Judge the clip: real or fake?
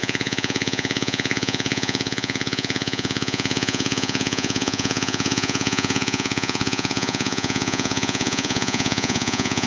fake